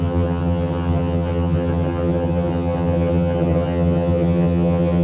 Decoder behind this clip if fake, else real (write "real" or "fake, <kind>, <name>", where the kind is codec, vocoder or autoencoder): fake, vocoder, HiFi-GAN